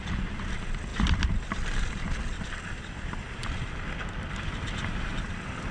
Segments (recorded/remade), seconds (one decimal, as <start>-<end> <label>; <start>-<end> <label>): 0.0-5.7 recorded